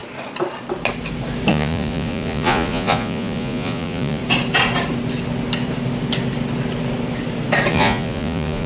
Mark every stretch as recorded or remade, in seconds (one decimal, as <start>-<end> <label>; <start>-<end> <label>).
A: 0.0-1.5 recorded; 1.5-4.2 remade; 4.2-7.7 recorded; 7.7-8.7 remade